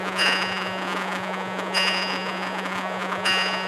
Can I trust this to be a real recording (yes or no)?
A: no